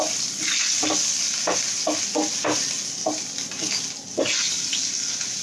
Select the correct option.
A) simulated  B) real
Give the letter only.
B